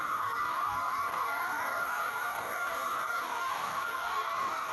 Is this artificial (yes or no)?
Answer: yes